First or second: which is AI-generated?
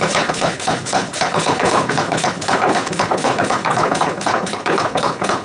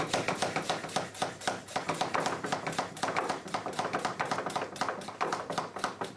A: first